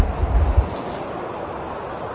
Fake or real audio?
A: real